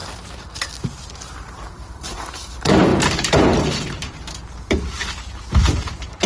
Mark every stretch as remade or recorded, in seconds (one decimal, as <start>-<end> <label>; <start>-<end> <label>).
0.0-1.5 recorded; 1.5-6.3 remade